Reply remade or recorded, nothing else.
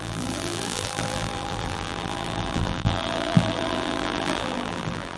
remade